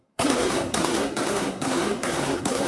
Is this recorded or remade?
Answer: remade